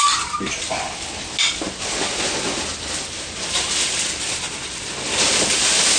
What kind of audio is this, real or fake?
real